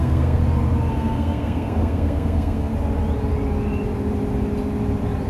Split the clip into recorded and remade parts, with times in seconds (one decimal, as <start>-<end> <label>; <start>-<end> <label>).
0.0-0.4 remade; 0.4-0.9 recorded; 0.9-2.7 remade; 2.7-5.3 recorded